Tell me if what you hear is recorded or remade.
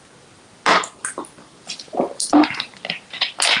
recorded